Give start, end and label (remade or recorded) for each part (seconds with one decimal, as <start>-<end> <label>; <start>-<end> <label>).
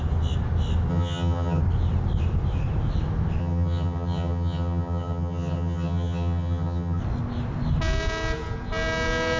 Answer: 0.0-0.9 recorded; 0.9-1.6 remade; 1.6-3.4 recorded; 3.4-7.0 remade; 7.0-9.4 recorded